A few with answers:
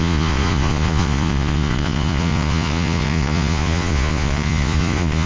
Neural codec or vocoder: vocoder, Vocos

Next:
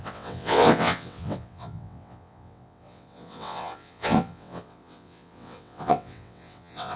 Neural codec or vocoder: vocoder, WaveNeXt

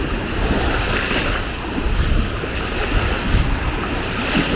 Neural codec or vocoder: none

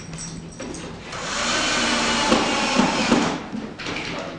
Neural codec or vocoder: none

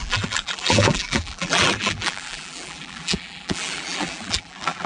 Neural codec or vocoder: vocoder, BigVGAN v2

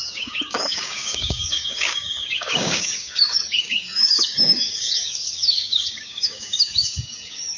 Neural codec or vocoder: codec, DAC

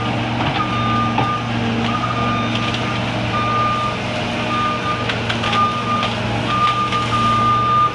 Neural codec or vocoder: none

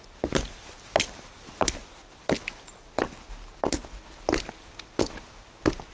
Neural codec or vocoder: none